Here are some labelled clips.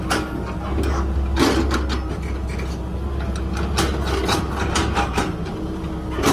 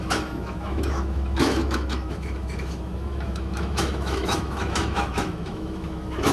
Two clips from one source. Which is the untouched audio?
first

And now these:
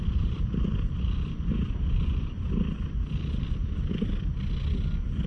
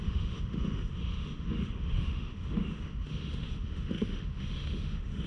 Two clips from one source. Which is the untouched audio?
first